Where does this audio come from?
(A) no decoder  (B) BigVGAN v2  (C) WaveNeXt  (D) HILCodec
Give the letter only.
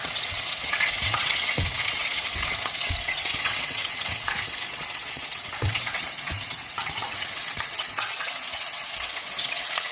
C